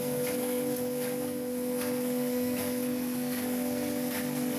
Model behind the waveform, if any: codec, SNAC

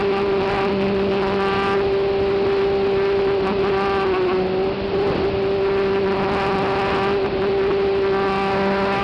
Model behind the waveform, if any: none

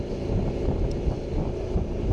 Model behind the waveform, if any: none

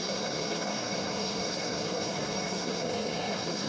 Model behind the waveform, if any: codec, SNAC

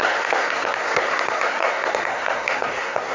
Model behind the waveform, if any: codec, SNAC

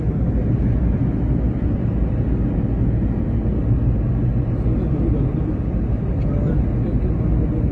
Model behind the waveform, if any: none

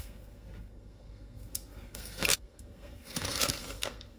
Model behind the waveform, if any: codec, SNAC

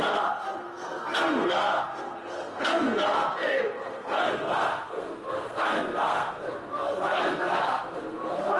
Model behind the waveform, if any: codec, SNAC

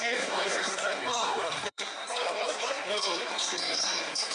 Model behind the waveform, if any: codec, SNAC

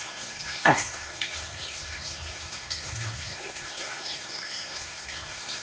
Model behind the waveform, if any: codec, SNAC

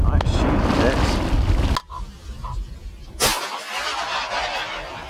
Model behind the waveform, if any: none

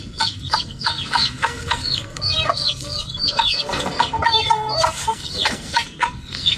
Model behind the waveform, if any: codec, SNAC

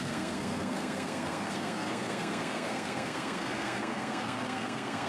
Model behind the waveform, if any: codec, SNAC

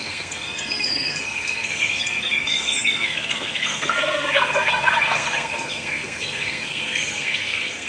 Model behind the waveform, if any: codec, SNAC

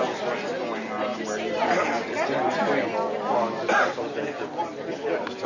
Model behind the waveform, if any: none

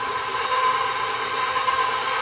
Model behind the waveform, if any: none